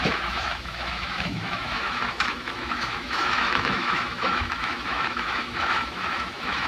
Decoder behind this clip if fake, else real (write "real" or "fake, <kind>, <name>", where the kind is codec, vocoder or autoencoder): fake, autoencoder, DAC-VAE